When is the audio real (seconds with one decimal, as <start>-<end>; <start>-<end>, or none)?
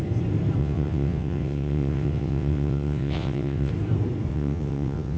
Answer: 0.0-0.6; 3.7-4.3